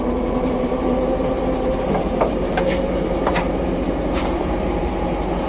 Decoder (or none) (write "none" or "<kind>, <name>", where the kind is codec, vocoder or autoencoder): vocoder, BigVGAN v2